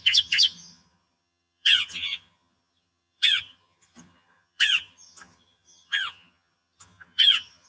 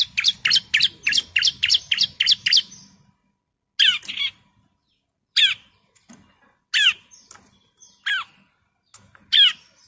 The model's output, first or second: first